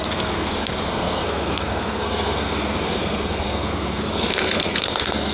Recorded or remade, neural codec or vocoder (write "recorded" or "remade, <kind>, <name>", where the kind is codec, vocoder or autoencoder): remade, codec, SNAC